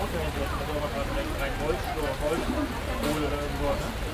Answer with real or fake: real